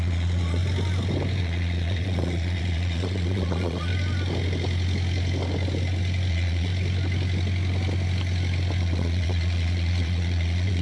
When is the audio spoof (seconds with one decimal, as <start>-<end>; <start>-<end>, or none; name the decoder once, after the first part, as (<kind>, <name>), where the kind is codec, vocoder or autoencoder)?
0.0-0.6 (vocoder, Vocos); 1.4-3.9; 6.3-6.7; 8.8-10.8